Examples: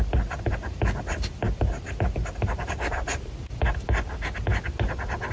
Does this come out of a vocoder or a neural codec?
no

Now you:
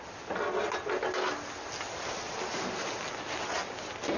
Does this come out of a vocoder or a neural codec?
no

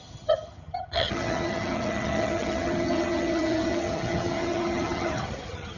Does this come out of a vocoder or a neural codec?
yes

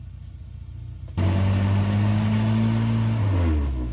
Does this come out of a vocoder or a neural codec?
no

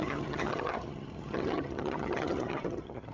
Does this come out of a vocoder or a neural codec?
yes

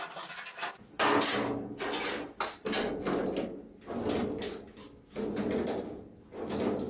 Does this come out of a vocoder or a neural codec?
no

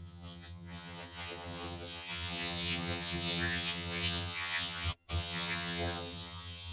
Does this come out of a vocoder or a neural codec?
yes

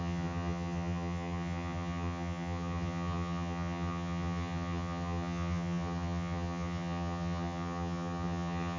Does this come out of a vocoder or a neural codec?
yes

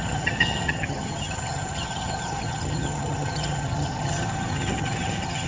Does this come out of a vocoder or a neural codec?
yes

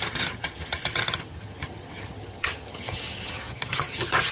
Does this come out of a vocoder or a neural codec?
yes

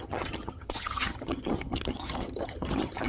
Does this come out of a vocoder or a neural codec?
yes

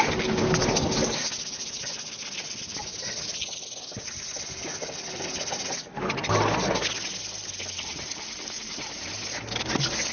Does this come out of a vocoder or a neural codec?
no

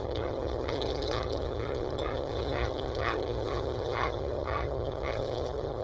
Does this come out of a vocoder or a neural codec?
yes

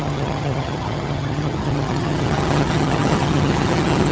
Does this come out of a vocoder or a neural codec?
yes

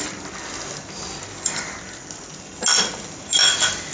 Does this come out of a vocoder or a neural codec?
no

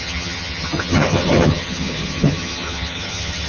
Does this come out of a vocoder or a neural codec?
yes